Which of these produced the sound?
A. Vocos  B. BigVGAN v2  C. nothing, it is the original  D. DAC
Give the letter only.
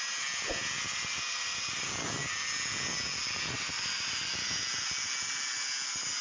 C